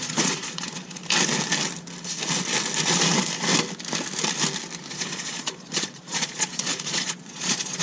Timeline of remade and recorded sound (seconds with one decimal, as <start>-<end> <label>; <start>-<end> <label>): 0.0-1.0 remade; 1.0-4.9 recorded; 4.9-7.8 remade